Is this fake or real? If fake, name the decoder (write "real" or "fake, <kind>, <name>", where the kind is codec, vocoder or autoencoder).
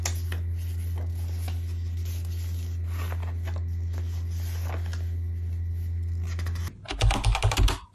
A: real